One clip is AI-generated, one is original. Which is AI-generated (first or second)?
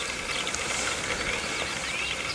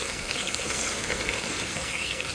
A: second